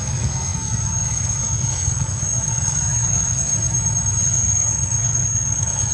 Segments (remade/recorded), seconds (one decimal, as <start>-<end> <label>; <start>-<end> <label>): 0.0-3.5 remade; 3.5-4.2 recorded; 4.2-5.9 remade